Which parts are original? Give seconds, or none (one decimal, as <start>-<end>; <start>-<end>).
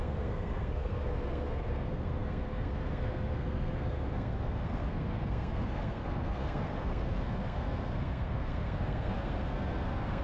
none